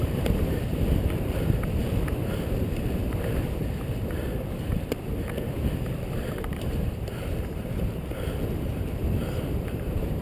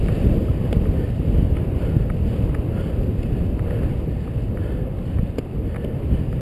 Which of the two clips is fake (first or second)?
first